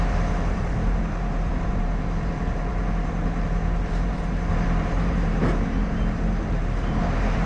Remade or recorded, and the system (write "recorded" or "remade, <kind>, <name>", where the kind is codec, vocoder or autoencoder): remade, vocoder, BigVGAN v2